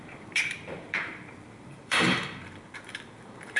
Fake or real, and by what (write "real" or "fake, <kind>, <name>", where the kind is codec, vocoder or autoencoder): fake, vocoder, BigVGAN v2